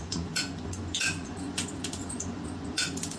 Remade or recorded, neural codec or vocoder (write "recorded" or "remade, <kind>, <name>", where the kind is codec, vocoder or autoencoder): remade, vocoder, Vocos